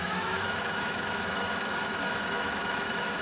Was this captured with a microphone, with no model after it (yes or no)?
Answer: no